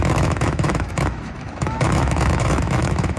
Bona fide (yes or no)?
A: no